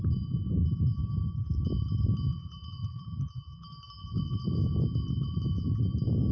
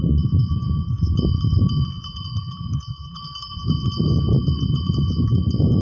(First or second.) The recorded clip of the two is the first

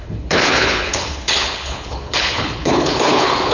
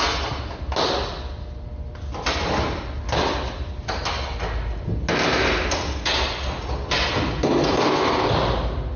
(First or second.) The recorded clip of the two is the second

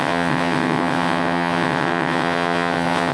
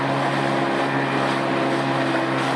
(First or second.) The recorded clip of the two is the second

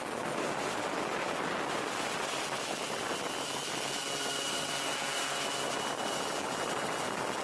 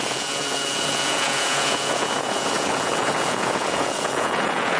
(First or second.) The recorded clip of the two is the first